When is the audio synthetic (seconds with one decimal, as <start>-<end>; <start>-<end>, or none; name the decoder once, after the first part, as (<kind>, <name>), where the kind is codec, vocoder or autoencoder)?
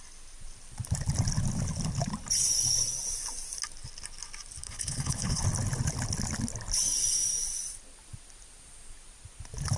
4.6-5.4 (codec, HILCodec)